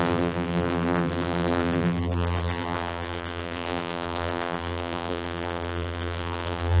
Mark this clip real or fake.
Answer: fake